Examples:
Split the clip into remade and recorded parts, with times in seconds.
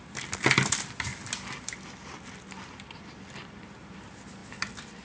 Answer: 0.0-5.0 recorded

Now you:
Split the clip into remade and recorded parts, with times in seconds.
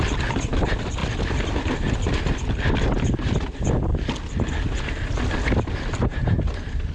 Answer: 0.0-6.9 recorded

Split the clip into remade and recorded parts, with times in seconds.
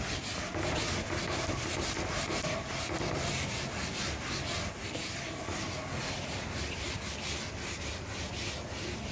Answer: 0.0-9.1 recorded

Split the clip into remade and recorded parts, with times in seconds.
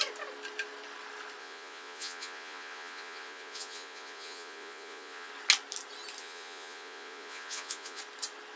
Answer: 0.0-1.4 recorded; 1.4-5.3 remade; 5.3-6.2 recorded; 6.2-8.0 remade; 8.0-8.6 recorded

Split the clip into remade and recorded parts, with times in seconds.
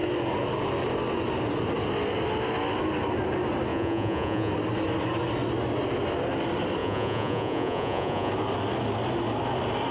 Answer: 0.0-3.7 recorded; 3.7-4.5 remade; 4.5-6.8 recorded; 6.8-8.3 remade; 8.3-9.9 recorded